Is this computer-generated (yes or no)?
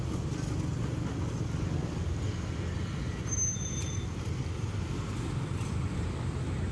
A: no